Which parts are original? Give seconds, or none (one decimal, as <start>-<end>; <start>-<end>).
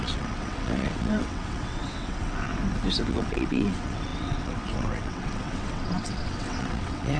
2.5-3.1